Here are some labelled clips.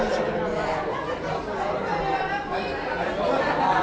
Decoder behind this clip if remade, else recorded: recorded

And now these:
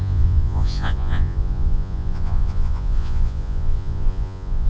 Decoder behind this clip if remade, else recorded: remade, vocoder, Vocos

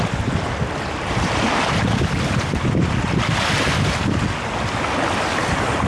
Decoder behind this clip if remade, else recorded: recorded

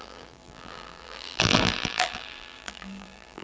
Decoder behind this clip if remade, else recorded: remade, vocoder, BigVGAN v2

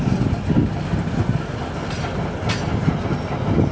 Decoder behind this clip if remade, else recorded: recorded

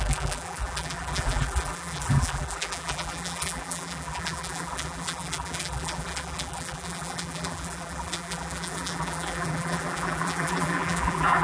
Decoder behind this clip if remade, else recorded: remade, vocoder, BigVGAN v2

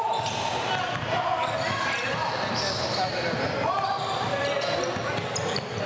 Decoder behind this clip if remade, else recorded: recorded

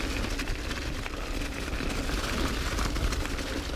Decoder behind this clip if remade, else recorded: recorded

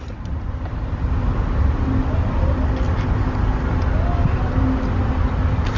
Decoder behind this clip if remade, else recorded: recorded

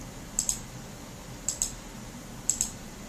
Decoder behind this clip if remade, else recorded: remade, vocoder, BigVGAN v2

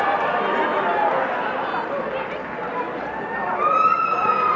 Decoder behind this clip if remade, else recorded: recorded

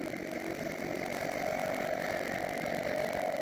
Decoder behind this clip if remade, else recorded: remade, vocoder, BigVGAN v2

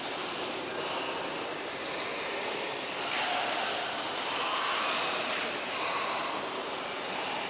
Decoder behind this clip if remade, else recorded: recorded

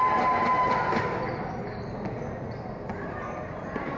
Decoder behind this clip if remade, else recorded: recorded